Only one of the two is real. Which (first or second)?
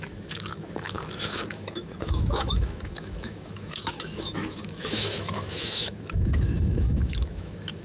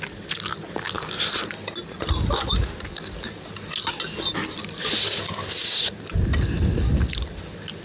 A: second